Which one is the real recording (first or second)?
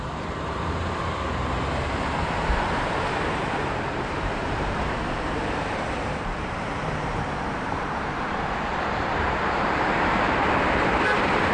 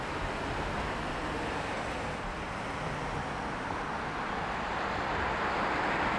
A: second